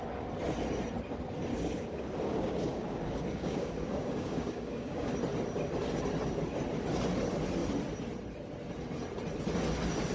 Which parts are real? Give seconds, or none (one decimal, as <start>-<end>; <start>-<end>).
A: 0.0-1.5; 5.1-10.1